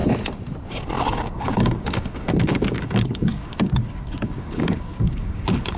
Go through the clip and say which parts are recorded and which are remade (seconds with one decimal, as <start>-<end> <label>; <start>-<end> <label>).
0.0-0.7 recorded; 0.7-5.8 remade